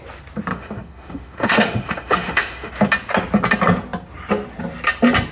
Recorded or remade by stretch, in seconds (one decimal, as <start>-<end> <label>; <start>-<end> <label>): 0.0-0.5 recorded; 0.5-2.7 remade; 2.7-5.3 recorded